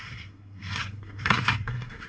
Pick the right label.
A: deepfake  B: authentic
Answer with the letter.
A